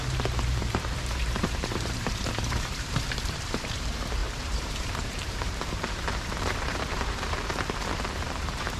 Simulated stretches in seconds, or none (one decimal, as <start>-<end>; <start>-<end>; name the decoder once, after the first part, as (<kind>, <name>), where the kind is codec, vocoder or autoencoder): 0.0-8.8 (vocoder, BigVGAN v2)